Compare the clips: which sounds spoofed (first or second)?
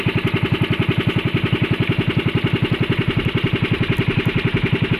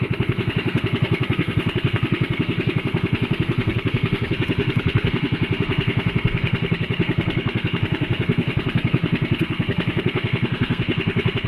second